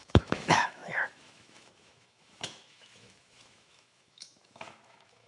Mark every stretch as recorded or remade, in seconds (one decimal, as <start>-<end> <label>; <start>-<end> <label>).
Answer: 0.0-5.3 remade